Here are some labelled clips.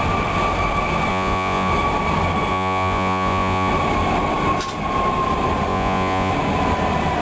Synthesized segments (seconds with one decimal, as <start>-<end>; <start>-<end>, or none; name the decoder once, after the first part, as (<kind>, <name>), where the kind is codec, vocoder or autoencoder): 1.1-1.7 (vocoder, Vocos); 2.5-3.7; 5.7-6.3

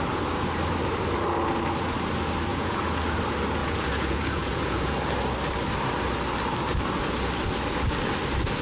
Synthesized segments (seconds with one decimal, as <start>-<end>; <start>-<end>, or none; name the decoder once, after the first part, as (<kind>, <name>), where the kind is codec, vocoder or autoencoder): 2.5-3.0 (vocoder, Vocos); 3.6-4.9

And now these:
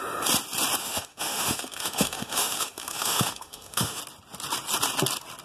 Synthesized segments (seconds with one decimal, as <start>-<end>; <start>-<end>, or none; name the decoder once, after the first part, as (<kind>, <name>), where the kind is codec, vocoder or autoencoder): 0.8-4.0 (autoencoder, DAC-VAE)

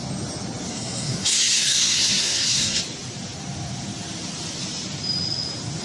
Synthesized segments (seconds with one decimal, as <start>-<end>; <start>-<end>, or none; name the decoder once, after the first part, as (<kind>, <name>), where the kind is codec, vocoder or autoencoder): 0.7-2.8 (codec, SNAC)